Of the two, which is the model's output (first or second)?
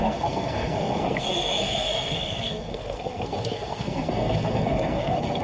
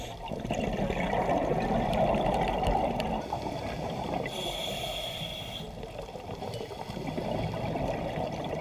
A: first